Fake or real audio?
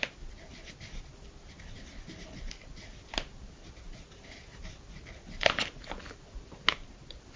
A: real